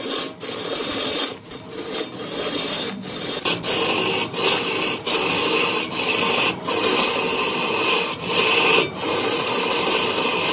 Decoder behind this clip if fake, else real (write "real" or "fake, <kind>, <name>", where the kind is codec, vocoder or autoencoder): real